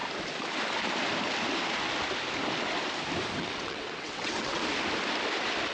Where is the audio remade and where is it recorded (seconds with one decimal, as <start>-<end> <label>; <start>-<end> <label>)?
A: 0.0-3.4 recorded; 3.4-4.6 remade; 4.6-5.7 recorded